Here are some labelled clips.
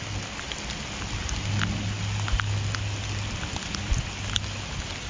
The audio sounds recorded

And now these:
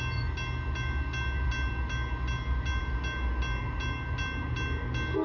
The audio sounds recorded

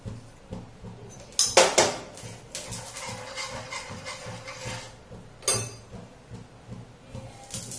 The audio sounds recorded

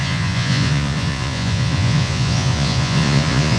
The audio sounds remade